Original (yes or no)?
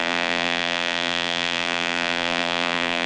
no